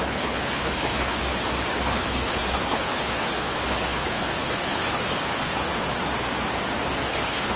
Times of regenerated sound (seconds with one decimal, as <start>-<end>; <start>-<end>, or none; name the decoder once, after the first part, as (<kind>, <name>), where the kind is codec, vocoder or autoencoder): 0.0-1.2 (codec, HILCodec); 1.7-5.7; 7.1-7.6